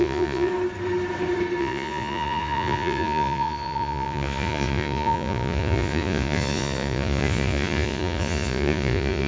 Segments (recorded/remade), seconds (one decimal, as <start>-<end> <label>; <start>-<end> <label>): 0.0-0.5 remade; 0.5-1.6 recorded; 1.6-9.3 remade